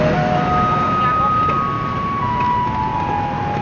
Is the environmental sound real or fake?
real